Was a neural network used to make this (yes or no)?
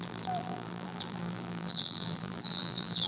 yes